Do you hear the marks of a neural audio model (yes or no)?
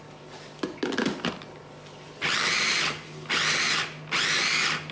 no